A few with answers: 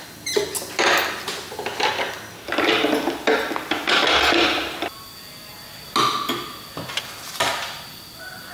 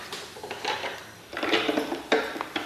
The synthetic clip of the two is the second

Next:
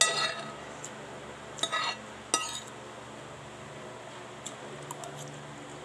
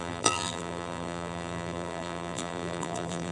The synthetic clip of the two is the second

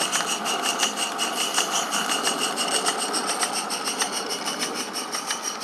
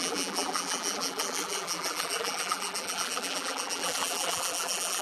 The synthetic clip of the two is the second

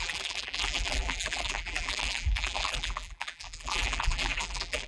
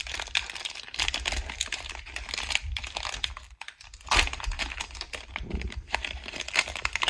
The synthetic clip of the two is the first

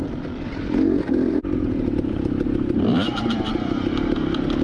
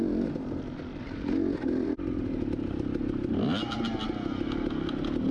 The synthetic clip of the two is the first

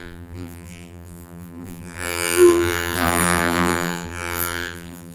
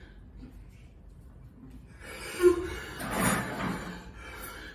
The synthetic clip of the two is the first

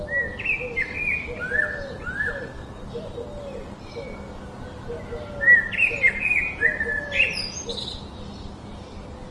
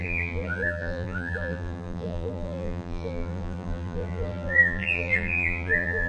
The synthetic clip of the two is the second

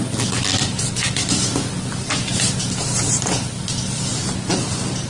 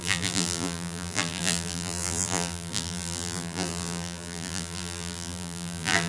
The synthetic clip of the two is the second